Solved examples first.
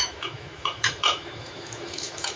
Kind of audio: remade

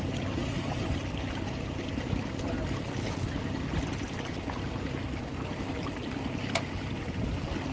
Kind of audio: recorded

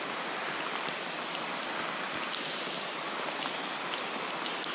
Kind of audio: recorded